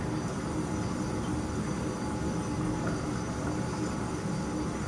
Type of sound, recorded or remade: recorded